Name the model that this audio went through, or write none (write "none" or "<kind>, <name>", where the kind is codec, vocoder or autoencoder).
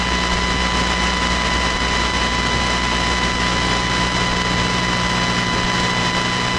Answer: none